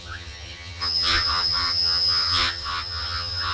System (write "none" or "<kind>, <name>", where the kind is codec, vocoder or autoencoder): vocoder, HiFi-GAN